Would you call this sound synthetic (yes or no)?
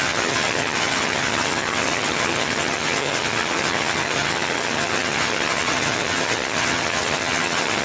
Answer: yes